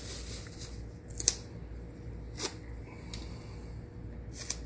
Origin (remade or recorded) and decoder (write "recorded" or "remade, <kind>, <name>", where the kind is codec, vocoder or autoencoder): recorded